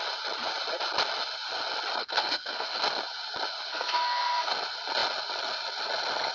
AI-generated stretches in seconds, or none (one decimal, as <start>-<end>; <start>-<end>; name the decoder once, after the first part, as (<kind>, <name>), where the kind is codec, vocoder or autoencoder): 2.0-2.8 (codec, SNAC); 3.7-4.5